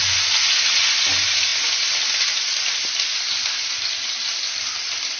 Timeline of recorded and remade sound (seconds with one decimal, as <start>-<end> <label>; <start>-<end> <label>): 0.0-5.2 recorded

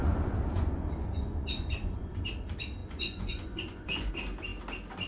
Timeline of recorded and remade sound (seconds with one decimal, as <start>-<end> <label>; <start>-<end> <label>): 0.0-2.2 remade; 2.2-2.8 recorded; 2.8-4.1 remade; 4.1-5.1 recorded

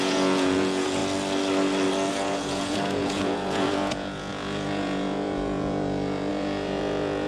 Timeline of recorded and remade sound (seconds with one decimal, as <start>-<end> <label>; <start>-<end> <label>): 0.0-1.0 remade; 1.0-2.1 recorded; 2.1-7.3 remade